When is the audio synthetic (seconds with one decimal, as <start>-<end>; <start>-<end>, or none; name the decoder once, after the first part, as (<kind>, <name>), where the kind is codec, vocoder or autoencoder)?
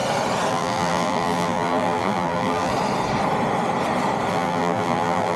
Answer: 0.5-2.7 (vocoder, BigVGAN v2); 4.3-5.4